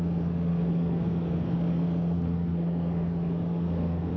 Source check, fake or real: fake